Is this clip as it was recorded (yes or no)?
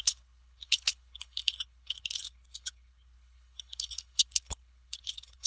no